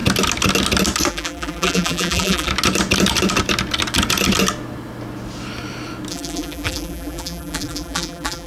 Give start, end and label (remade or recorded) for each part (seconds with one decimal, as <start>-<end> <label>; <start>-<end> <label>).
0.0-1.1 recorded; 1.1-2.5 remade; 2.5-6.1 recorded; 6.1-8.5 remade